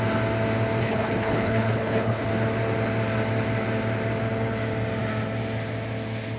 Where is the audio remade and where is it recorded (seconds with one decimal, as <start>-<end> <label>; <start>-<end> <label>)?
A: 0.0-0.8 recorded; 0.8-2.3 remade; 2.3-6.4 recorded

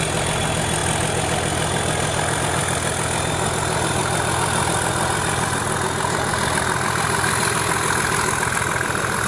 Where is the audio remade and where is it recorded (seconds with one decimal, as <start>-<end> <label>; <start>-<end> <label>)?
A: 0.0-9.3 recorded

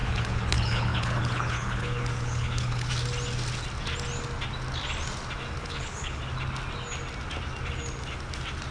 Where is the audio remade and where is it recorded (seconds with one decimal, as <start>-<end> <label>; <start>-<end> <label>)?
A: 0.0-2.9 remade; 2.9-5.6 recorded; 5.6-6.2 remade; 6.2-8.7 recorded

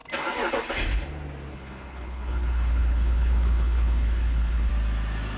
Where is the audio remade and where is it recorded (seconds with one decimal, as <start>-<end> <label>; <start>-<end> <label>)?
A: 0.0-1.5 recorded; 1.5-4.7 remade; 4.7-5.4 recorded

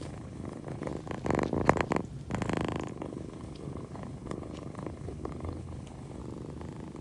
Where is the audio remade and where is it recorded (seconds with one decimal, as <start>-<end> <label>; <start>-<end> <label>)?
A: 0.0-0.9 remade; 0.9-2.9 recorded; 2.9-6.2 remade; 6.2-7.0 recorded

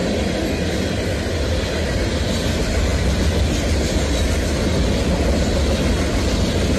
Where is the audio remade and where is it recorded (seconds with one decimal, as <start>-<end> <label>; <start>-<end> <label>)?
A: 0.0-6.8 recorded